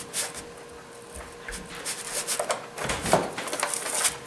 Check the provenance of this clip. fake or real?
real